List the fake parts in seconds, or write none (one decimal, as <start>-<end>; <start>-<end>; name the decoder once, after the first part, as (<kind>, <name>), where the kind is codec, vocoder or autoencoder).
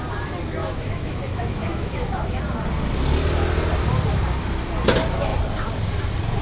0.6-2.4 (autoencoder, DAC-VAE)